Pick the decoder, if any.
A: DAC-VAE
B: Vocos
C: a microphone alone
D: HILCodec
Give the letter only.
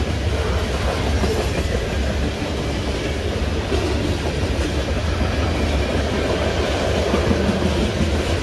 C